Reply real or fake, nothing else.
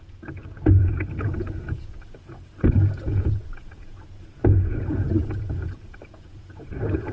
fake